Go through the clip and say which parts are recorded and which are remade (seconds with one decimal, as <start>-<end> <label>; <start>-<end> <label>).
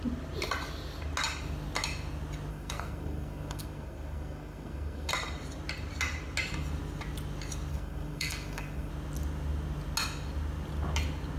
0.0-2.5 recorded; 2.5-5.1 remade; 5.1-7.7 recorded; 7.7-8.9 remade; 8.9-11.4 recorded